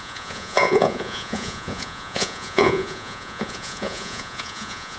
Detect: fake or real fake